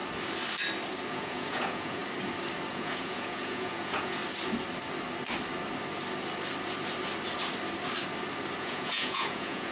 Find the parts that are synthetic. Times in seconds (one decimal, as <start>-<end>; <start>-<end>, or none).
1.1-2.0; 2.7-4.2; 8.6-9.7